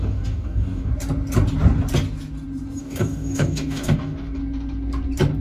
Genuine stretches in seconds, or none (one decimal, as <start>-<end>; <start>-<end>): 0.9-2.8; 4.4-5.4